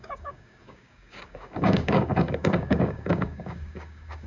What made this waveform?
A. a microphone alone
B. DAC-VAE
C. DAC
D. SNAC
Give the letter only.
C